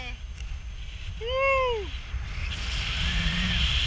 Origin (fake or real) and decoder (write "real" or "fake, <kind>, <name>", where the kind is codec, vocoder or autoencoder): real